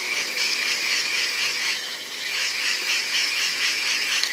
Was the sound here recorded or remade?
remade